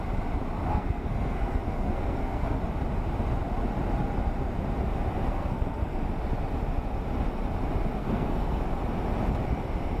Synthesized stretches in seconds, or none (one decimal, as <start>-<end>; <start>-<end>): 0.7-2.6; 5.3-6.0; 8.0-8.6